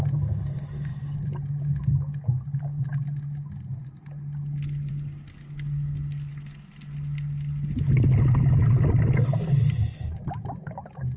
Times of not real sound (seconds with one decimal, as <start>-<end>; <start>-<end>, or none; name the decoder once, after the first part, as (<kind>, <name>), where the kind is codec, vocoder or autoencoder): none